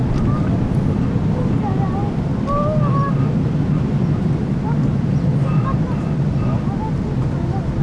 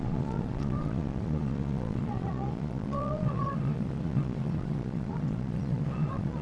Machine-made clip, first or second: second